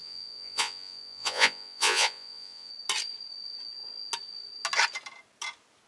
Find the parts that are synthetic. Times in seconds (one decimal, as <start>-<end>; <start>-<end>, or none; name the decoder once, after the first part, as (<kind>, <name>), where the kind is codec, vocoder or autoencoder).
0.0-2.7 (vocoder, Vocos)